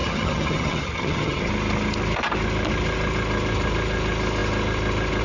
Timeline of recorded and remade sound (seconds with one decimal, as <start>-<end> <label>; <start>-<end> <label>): 0.0-1.5 remade; 1.5-5.2 recorded